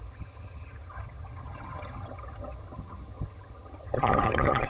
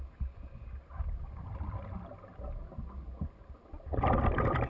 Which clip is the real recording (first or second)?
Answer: second